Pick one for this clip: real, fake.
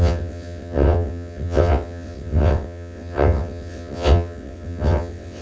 fake